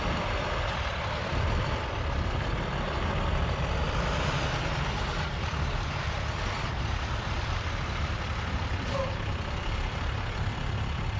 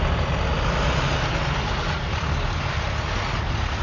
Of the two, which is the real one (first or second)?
second